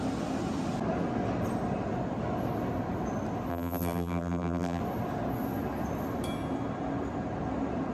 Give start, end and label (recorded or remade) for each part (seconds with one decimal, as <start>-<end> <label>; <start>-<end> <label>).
0.0-3.5 recorded; 3.5-4.8 remade; 4.8-7.9 recorded